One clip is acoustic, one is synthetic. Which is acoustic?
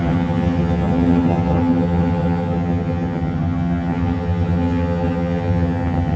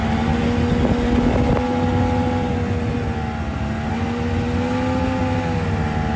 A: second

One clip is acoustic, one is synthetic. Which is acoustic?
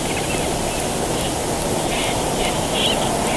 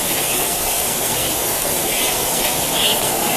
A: first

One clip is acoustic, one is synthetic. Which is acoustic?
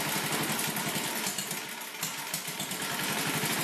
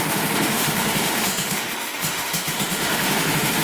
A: first